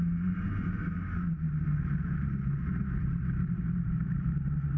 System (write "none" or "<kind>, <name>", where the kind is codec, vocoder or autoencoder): vocoder, BigVGAN v2